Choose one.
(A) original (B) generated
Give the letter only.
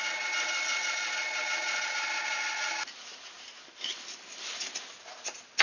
A